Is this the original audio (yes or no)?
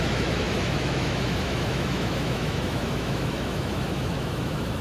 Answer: no